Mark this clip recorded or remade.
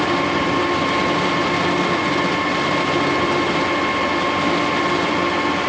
recorded